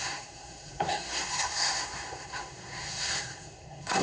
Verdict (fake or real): fake